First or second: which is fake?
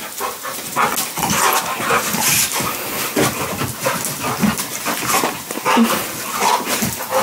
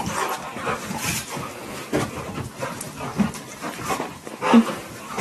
second